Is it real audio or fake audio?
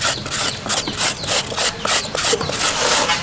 real